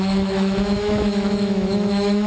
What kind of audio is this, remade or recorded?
remade